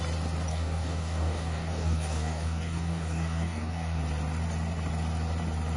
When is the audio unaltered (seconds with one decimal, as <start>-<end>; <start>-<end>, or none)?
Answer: 0.0-0.5; 4.0-5.8